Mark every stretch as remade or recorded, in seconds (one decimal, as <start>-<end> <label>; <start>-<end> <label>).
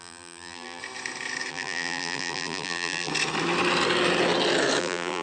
0.0-0.8 remade; 0.8-1.5 recorded; 1.5-3.1 remade; 3.1-4.8 recorded; 4.8-5.2 remade